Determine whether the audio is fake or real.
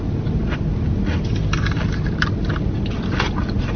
real